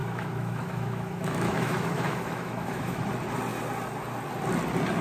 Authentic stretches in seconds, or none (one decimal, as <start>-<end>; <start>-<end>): 3.0-5.0